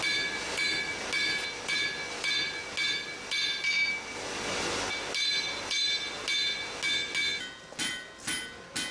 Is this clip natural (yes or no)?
yes